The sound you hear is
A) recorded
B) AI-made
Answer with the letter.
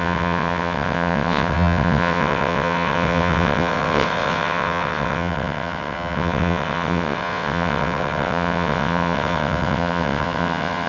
B